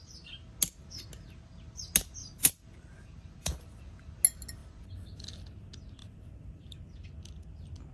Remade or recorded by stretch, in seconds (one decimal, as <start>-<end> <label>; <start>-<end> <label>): 0.0-2.2 recorded; 2.2-3.8 remade; 3.8-4.6 recorded; 4.6-5.3 remade; 5.3-6.0 recorded; 6.0-6.8 remade; 6.8-7.9 recorded